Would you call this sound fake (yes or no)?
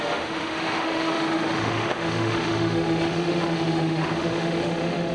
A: yes